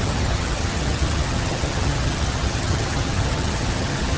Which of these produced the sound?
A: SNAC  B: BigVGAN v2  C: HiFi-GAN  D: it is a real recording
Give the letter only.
C